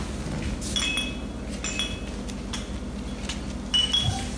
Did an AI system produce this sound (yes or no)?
no